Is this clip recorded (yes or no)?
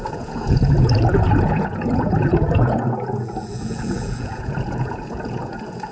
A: no